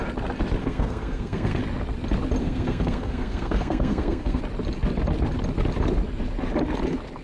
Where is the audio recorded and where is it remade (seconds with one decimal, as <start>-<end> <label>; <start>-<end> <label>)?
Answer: 0.0-0.6 recorded; 0.6-1.6 remade; 1.6-2.4 recorded; 2.4-4.4 remade; 4.4-7.2 recorded